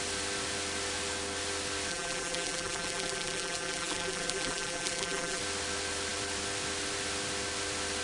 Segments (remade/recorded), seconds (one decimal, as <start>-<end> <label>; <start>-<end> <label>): 0.0-1.9 recorded; 1.9-5.4 remade; 5.4-8.0 recorded

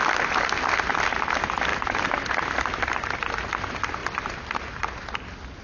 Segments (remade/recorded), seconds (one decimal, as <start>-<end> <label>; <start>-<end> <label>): 0.0-1.7 recorded; 1.7-2.5 remade; 2.5-5.6 recorded

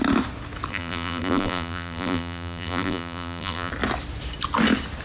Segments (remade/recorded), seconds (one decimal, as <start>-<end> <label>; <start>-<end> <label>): 0.0-0.7 recorded; 0.7-3.7 remade; 3.7-5.0 recorded

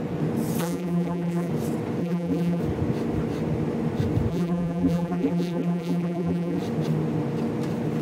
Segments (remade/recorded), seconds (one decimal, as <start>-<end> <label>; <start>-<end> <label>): 0.0-0.6 recorded; 0.6-1.5 remade; 1.5-2.0 recorded; 2.0-2.6 remade; 2.6-4.3 recorded; 4.3-6.6 remade; 6.6-8.0 recorded

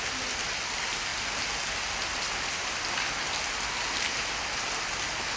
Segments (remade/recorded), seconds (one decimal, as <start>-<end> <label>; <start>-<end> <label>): 0.0-5.4 recorded

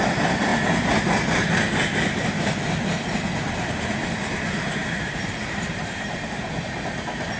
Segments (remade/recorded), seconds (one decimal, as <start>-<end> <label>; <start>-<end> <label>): 0.0-4.8 recorded; 4.8-6.5 remade; 6.5-7.4 recorded